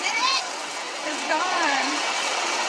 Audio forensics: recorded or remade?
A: remade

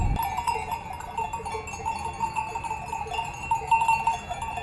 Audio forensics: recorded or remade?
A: recorded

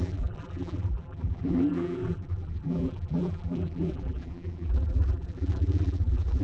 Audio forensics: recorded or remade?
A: remade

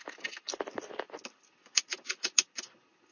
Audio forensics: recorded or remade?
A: recorded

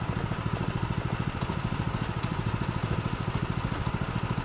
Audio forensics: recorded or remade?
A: recorded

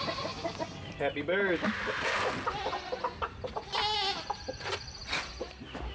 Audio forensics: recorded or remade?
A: recorded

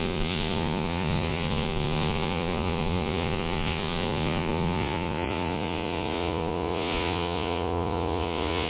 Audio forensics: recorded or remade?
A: remade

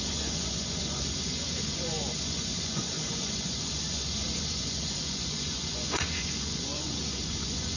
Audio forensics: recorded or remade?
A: remade